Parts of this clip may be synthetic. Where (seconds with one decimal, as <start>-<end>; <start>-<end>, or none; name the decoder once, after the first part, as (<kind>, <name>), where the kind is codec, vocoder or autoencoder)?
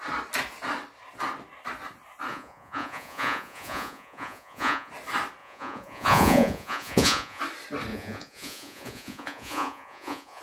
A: 2.3-4.9 (vocoder, Vocos); 5.4-7.4; 7.9-10.4